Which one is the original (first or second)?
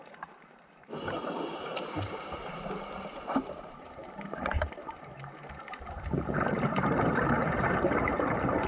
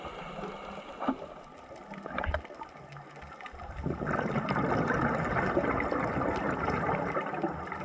second